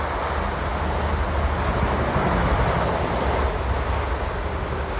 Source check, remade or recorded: recorded